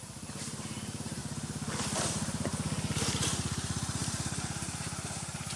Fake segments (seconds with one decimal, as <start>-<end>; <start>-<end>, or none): 0.0-1.2; 2.1-2.5; 3.0-5.6